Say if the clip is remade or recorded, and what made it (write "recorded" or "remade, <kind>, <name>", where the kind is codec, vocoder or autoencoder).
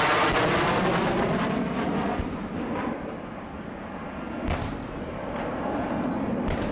recorded